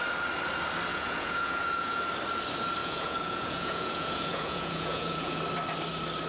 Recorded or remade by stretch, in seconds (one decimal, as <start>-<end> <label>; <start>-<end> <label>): 0.0-0.9 recorded; 0.9-2.0 remade; 2.0-2.8 recorded; 2.8-5.4 remade; 5.4-6.3 recorded